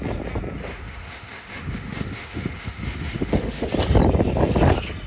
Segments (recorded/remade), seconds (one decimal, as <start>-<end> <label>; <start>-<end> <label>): 0.0-0.6 recorded; 0.6-3.7 remade; 3.7-5.1 recorded